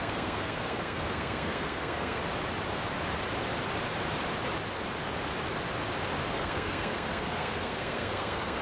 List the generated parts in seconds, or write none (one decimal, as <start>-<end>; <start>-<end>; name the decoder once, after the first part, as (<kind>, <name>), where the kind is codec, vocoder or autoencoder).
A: 0.0-2.2 (codec, SNAC); 6.3-8.6